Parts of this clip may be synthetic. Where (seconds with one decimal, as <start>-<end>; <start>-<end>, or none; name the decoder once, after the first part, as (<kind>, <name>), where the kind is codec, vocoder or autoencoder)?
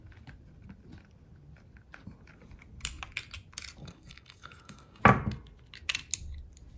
3.8-5.0 (codec, DAC)